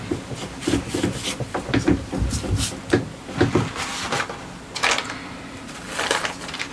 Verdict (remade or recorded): recorded